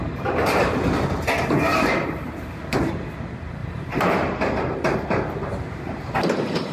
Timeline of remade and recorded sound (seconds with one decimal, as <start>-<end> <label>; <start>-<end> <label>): 0.0-0.7 remade; 0.7-1.7 recorded; 1.7-2.8 remade; 2.8-3.6 recorded; 3.6-6.7 remade